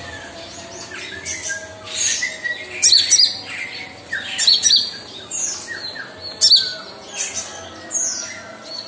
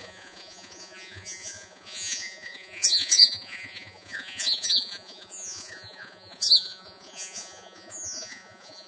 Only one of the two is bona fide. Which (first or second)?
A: first